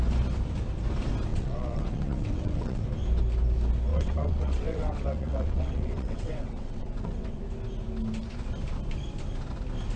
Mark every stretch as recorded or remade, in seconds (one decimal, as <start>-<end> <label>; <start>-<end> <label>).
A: 0.0-1.3 recorded; 1.3-2.8 remade; 2.8-3.9 recorded; 3.9-7.4 remade; 7.4-10.0 recorded